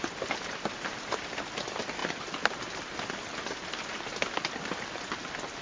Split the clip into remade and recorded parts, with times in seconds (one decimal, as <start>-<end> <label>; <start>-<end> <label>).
0.0-5.6 remade